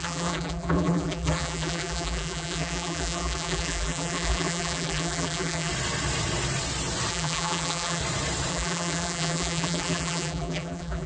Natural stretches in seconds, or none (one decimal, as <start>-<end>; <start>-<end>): 5.7-7.1; 8.0-8.5